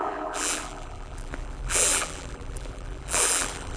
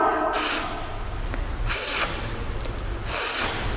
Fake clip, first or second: first